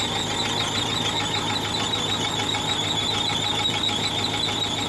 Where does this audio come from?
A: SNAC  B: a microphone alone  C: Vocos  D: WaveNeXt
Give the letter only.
B